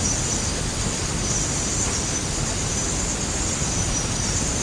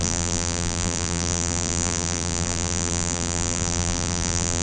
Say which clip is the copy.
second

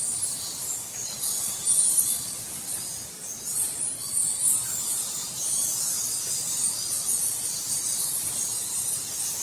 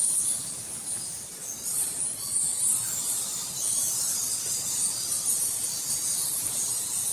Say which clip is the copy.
second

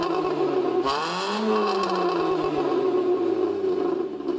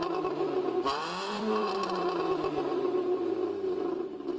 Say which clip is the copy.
second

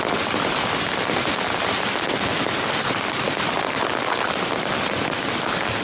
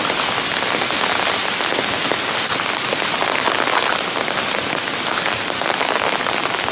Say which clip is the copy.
first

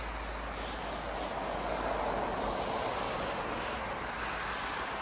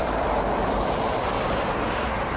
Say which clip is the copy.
second